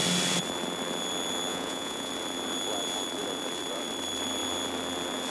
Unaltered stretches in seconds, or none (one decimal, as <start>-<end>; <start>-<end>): 0.0-1.5; 2.1-5.3